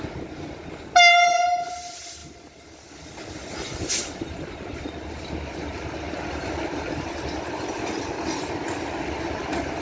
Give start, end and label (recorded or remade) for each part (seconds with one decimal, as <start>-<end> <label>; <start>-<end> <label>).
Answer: 0.0-3.7 recorded; 3.7-8.4 remade; 8.4-9.8 recorded